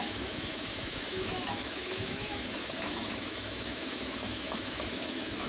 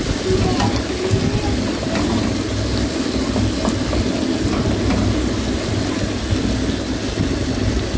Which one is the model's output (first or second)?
first